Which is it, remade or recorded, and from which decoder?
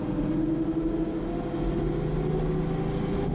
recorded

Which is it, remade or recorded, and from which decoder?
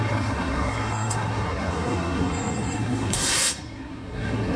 remade, codec, SNAC